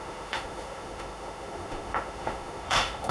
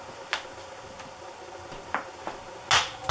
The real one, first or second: second